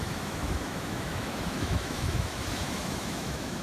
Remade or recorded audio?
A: remade